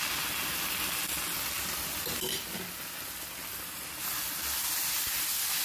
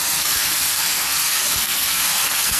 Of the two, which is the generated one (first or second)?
second